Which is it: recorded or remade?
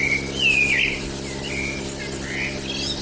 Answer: recorded